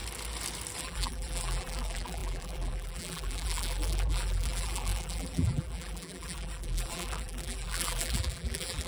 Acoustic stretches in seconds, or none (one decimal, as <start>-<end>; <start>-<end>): 0.0-0.8